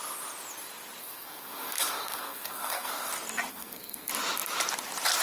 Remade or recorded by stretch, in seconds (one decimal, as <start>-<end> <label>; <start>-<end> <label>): 0.0-1.0 recorded; 1.0-3.1 remade; 3.1-3.5 recorded; 3.5-4.1 remade; 4.1-5.2 recorded